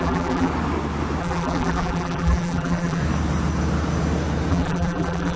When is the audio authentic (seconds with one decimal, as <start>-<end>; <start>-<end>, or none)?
0.5-1.2; 3.0-4.5